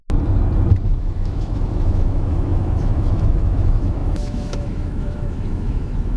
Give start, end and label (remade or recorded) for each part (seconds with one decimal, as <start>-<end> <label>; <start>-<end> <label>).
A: 0.0-1.0 recorded; 1.0-6.2 remade